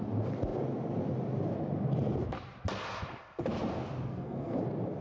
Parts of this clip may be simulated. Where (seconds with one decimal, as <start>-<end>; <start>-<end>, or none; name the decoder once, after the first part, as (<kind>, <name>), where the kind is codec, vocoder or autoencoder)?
4.1-4.6 (codec, SNAC)